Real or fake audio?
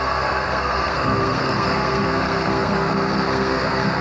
fake